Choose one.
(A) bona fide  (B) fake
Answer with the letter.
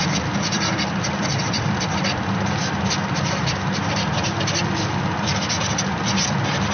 B